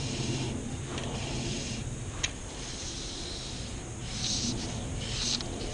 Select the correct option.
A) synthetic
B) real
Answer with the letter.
B